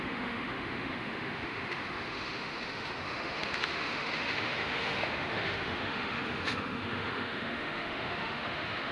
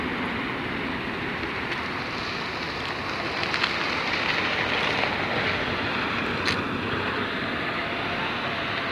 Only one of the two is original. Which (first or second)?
second